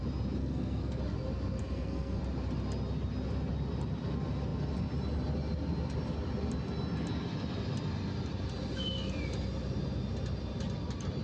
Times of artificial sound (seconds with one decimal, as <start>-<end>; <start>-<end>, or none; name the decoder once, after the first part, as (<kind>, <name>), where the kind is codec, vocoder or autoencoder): 0.4-1.0 (codec, SNAC); 1.6-2.2